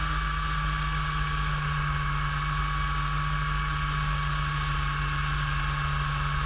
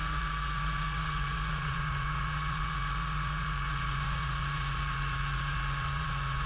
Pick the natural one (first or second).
first